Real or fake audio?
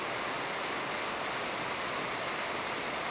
real